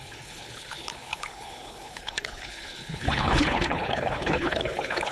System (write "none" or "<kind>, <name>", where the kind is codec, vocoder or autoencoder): codec, HILCodec